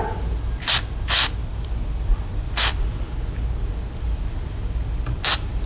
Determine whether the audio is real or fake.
real